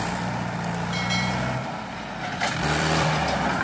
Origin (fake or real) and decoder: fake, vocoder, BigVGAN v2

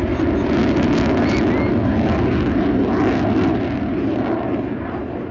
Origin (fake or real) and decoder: real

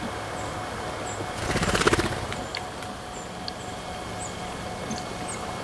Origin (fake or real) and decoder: real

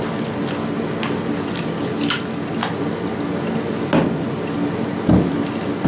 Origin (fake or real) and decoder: real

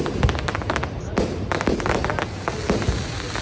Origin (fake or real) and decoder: real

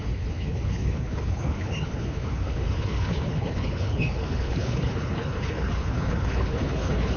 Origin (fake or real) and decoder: fake, codec, HILCodec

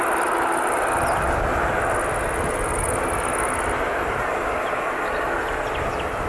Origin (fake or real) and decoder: real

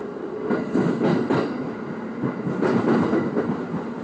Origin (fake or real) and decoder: real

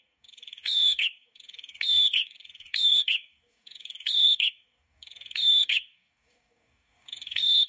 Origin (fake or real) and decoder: fake, codec, DAC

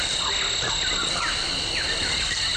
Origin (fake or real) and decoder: real